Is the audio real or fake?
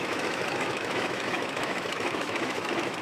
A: fake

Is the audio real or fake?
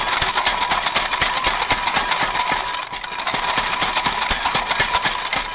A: real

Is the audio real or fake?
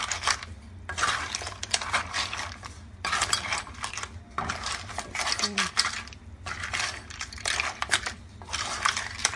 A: real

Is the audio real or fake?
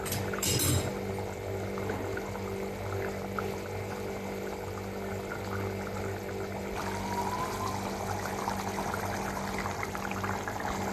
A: fake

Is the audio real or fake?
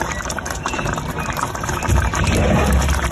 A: fake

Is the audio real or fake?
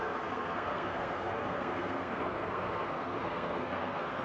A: fake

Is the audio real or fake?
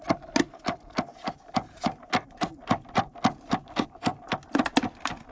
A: real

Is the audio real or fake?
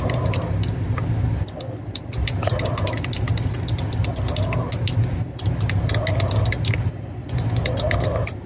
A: real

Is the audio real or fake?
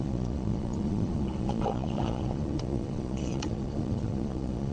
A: fake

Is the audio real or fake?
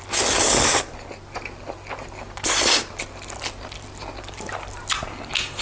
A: real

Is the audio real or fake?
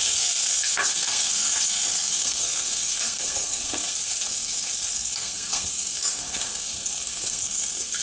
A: fake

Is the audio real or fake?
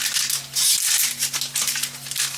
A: real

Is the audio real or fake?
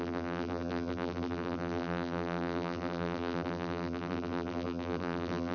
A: fake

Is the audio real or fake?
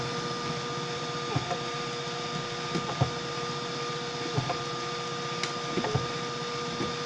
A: real